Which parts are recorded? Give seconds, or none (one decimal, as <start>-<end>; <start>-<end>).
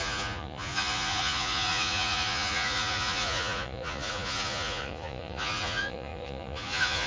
none